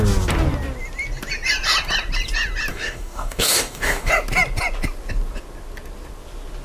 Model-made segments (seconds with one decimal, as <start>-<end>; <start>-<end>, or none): 2.7-4.1